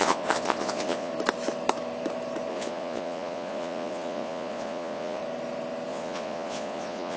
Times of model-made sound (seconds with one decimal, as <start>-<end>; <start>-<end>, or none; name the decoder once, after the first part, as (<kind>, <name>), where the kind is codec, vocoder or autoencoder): 0.0-1.1 (vocoder, Vocos); 2.5-5.2; 5.9-7.2